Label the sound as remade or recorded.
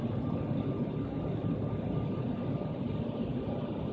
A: recorded